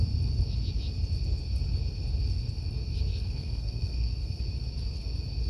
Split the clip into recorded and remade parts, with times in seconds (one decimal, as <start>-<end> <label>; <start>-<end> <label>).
0.0-3.1 recorded; 3.1-4.4 remade; 4.4-5.5 recorded

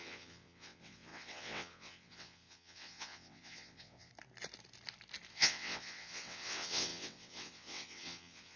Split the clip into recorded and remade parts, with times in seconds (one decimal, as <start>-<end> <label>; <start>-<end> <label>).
0.0-4.1 remade; 4.1-5.3 recorded; 5.3-8.6 remade

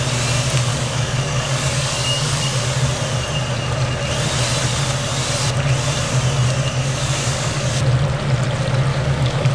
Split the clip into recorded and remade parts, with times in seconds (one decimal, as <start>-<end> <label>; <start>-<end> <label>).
0.0-0.7 recorded; 0.7-2.8 remade; 2.8-6.8 recorded; 6.8-7.8 remade; 7.8-8.9 recorded; 8.9-9.5 remade

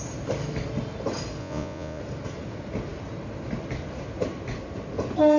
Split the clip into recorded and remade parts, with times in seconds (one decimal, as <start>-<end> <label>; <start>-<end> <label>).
0.0-1.4 recorded; 1.4-2.0 remade; 2.0-5.4 recorded

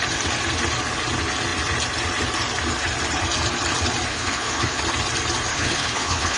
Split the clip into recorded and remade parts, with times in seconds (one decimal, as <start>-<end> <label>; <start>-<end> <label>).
0.0-4.1 recorded; 4.1-4.8 remade; 4.8-5.5 recorded; 5.5-6.4 remade

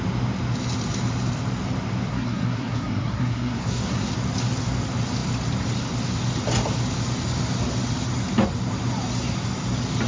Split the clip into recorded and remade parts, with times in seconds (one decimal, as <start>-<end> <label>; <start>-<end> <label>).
0.0-2.1 recorded; 2.1-4.1 remade; 4.1-10.1 recorded